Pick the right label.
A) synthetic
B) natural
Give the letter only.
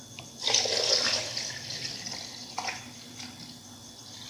B